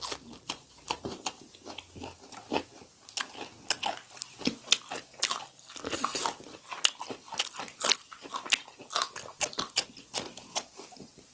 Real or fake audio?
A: real